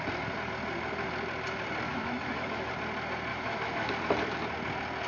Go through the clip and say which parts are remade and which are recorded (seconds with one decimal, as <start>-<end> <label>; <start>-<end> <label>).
0.0-1.9 recorded; 1.9-2.7 remade; 2.7-3.3 recorded; 3.3-3.9 remade; 3.9-5.1 recorded